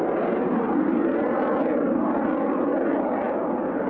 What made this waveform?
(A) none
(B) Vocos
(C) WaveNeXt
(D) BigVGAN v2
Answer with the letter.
A